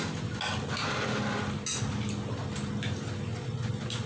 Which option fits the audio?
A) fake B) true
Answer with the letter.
B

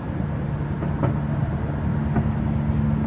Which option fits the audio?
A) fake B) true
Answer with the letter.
B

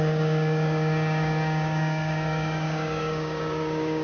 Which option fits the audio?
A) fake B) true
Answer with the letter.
A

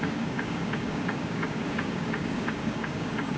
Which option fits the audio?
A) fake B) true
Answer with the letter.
A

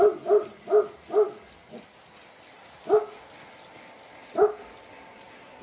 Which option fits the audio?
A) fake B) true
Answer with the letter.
B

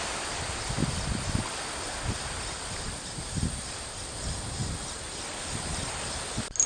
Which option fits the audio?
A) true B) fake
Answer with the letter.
A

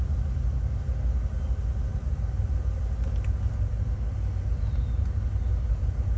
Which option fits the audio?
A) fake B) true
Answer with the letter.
B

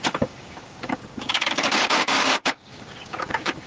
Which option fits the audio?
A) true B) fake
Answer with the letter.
B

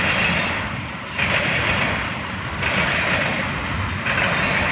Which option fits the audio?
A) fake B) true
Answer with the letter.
B